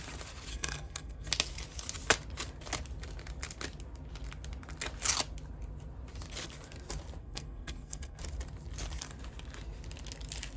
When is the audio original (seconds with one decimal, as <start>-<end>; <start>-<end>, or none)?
0.0-0.5; 1.3-7.2; 8.2-10.6